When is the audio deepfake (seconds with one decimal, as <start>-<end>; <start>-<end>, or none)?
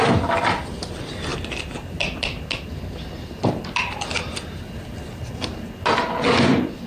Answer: none